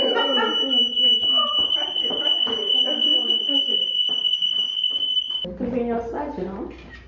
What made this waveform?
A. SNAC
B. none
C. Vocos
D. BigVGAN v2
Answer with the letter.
B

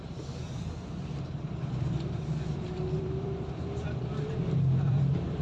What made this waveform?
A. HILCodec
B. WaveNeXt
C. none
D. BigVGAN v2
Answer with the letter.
D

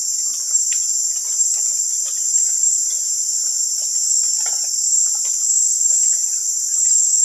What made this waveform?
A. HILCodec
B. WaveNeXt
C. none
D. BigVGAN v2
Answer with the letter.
D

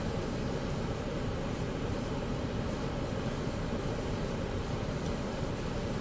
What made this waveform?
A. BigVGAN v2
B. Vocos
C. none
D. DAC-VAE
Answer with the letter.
A